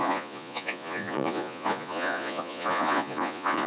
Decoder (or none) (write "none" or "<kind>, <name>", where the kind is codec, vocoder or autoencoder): vocoder, Vocos